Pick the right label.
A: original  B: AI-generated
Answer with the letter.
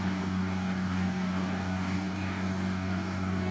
B